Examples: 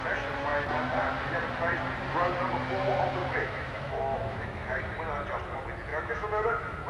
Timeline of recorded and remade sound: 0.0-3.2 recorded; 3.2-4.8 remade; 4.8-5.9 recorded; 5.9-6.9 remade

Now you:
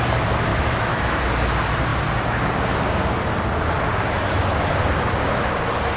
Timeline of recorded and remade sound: 0.0-0.5 recorded; 0.5-1.2 remade; 1.2-6.0 recorded

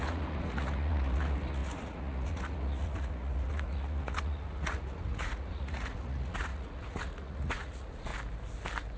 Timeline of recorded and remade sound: 0.0-8.1 remade; 8.1-9.0 recorded

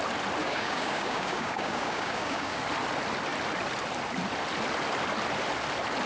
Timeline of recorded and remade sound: 0.0-0.4 recorded; 0.4-2.6 remade; 2.6-6.1 recorded